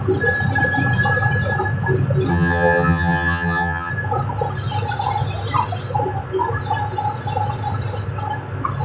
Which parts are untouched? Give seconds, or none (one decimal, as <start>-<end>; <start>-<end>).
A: 0.0-2.3; 3.9-8.8